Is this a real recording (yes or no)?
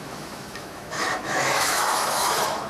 no